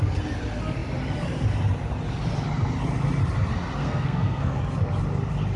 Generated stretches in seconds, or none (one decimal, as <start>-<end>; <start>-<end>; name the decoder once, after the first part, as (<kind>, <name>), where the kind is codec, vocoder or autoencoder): 3.8-4.6 (codec, SNAC)